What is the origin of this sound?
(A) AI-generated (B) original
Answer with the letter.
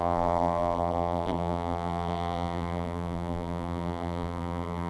A